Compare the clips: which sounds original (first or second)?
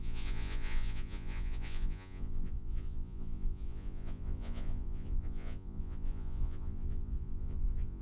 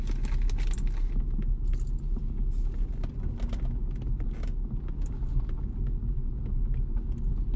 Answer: second